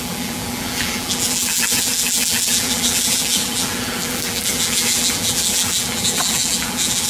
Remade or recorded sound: remade